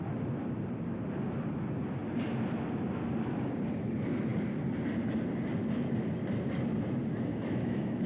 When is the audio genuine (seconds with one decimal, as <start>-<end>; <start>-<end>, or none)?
0.0-7.3